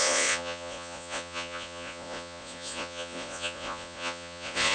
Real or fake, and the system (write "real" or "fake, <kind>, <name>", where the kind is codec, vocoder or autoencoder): fake, vocoder, Vocos